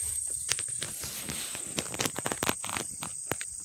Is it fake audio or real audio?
fake